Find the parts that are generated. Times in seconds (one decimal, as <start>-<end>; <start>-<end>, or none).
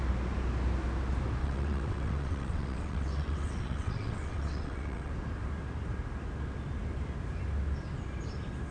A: 1.4-5.1